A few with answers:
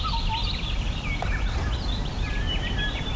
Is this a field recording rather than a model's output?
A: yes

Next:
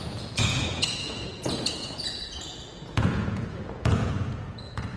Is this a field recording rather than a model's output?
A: no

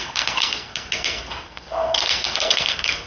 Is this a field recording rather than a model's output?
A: no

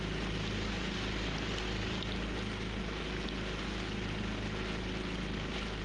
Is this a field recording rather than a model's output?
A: yes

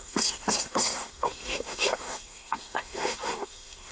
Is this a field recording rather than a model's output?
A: no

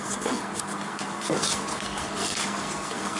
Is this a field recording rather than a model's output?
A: no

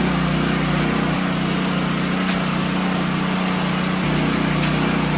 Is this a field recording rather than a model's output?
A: yes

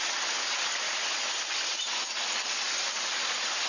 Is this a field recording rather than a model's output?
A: yes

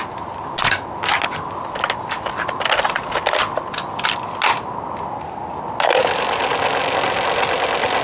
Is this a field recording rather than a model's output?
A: yes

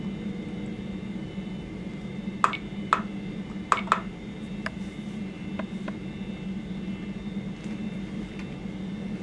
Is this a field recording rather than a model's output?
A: yes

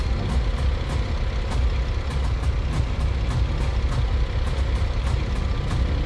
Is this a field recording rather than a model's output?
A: yes